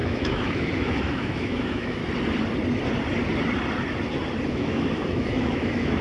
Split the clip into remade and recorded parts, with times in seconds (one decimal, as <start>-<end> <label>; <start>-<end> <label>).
0.0-2.0 remade; 2.0-4.5 recorded; 4.5-6.0 remade